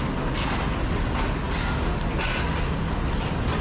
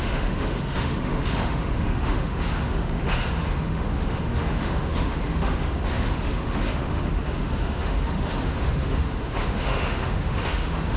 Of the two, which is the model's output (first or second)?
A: second